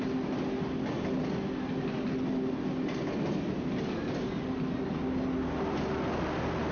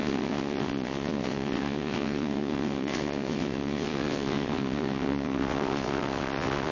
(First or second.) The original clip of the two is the first